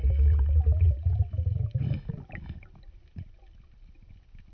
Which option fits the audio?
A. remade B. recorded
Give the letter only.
B